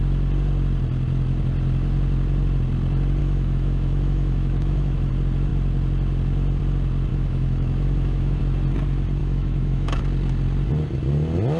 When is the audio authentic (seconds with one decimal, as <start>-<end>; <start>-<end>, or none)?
0.0-3.2; 5.1-7.1; 8.4-9.2; 10.0-11.6